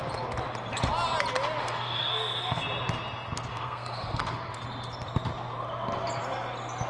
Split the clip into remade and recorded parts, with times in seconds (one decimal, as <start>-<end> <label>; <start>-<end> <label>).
0.0-1.6 recorded; 1.6-2.6 remade; 2.6-3.5 recorded; 3.5-4.2 remade; 4.2-6.9 recorded

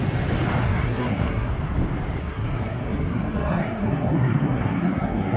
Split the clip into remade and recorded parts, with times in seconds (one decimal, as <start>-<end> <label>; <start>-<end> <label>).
0.0-0.6 recorded; 0.6-1.5 remade; 1.5-2.2 recorded; 2.2-5.4 remade

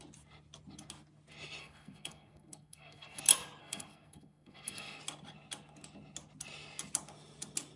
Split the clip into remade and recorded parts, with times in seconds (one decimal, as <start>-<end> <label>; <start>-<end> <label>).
0.0-1.6 recorded; 1.6-3.2 remade; 3.2-3.6 recorded; 3.6-5.0 remade; 5.0-7.8 recorded

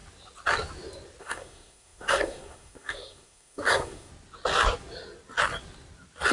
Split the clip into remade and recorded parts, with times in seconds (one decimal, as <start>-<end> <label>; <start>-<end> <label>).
0.0-1.2 recorded; 1.2-4.1 remade; 4.1-6.3 recorded

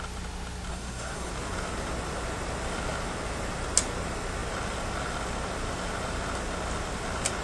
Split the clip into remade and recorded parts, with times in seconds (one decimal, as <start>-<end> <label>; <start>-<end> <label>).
0.0-0.7 recorded; 0.7-1.3 remade; 1.3-7.4 recorded

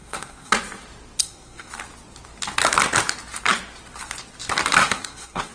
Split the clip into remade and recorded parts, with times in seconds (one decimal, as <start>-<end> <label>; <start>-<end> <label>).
0.0-0.5 remade; 0.5-1.2 recorded; 1.2-1.7 remade; 1.7-4.8 recorded; 4.8-5.5 remade

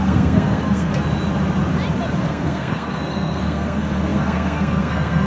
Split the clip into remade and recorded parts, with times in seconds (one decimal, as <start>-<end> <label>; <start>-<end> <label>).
0.0-0.9 remade; 0.9-2.2 recorded; 2.2-5.3 remade

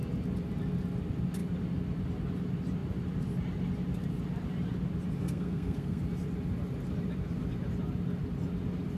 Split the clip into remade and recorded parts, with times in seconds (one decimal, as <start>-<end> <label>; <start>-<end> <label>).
0.0-5.2 recorded; 5.2-6.0 remade; 6.0-9.0 recorded